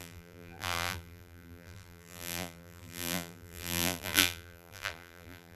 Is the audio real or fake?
fake